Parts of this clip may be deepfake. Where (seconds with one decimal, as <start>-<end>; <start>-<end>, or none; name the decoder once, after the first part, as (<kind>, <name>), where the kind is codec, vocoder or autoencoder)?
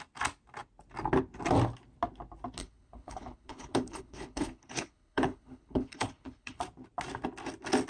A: 2.6-6.6 (codec, HILCodec)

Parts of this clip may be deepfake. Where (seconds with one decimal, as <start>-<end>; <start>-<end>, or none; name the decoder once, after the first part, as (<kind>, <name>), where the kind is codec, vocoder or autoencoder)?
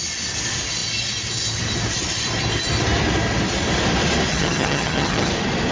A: 4.3-5.3 (vocoder, HiFi-GAN)